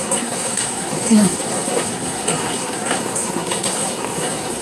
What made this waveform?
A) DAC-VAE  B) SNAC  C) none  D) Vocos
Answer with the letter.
B